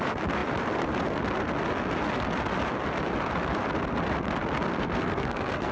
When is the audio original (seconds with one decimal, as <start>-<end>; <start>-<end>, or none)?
0.0-4.7